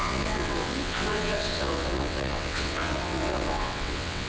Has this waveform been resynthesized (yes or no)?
yes